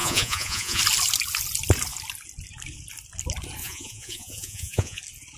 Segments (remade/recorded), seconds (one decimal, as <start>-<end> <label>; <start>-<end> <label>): 0.0-0.8 remade; 0.8-3.6 recorded; 3.6-5.0 remade; 5.0-5.4 recorded